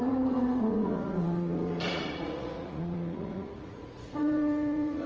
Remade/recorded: remade